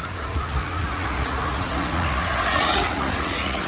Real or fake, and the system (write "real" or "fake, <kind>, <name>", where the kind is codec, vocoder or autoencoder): fake, vocoder, Vocos